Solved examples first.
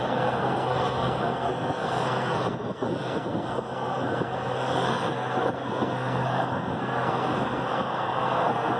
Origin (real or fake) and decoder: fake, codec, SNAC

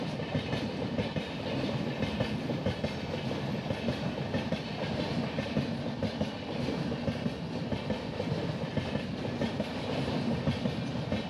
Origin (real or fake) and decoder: fake, vocoder, BigVGAN v2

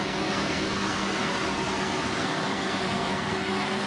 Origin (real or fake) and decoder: fake, codec, SNAC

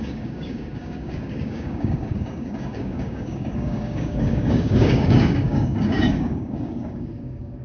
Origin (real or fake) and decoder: fake, codec, DAC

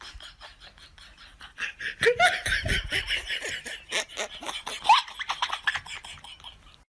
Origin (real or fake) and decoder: real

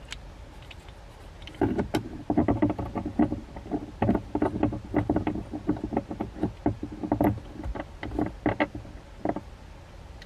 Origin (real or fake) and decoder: real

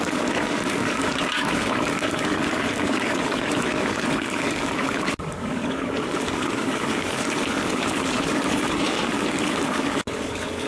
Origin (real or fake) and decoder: fake, codec, DAC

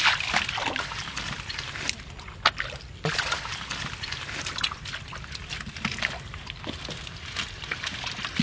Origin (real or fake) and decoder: real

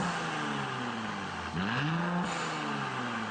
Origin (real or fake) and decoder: real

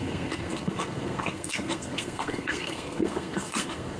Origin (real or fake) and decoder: fake, codec, SNAC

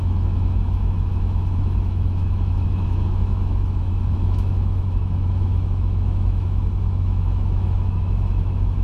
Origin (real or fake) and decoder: fake, autoencoder, DAC-VAE